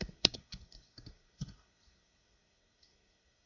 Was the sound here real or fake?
fake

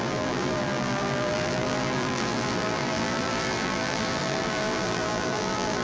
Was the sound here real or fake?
fake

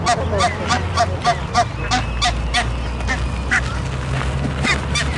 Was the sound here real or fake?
real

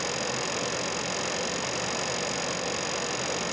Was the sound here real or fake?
real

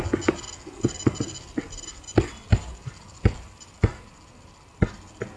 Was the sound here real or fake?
real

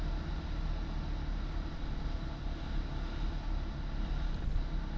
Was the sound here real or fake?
real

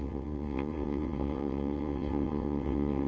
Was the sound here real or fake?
fake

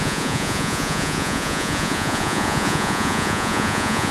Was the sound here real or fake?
fake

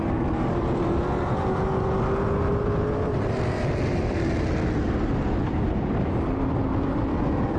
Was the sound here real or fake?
real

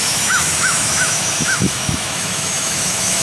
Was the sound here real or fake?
fake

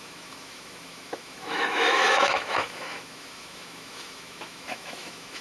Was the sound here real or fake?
fake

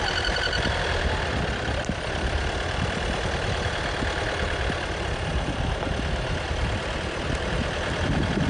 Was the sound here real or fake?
fake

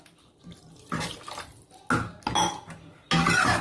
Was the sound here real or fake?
real